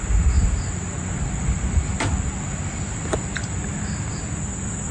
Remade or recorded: recorded